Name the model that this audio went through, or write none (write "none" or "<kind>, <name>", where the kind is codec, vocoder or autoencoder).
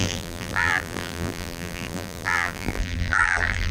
vocoder, BigVGAN v2